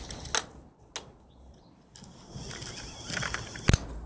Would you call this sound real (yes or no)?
yes